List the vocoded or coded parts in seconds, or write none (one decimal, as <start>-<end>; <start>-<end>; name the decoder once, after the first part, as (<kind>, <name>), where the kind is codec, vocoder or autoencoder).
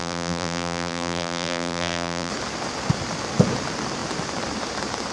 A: 0.0-2.3 (vocoder, BigVGAN v2)